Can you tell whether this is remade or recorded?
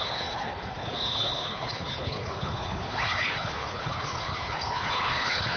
remade